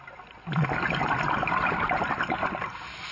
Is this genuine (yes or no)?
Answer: yes